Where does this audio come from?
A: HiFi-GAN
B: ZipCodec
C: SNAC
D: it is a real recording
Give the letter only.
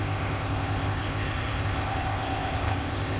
B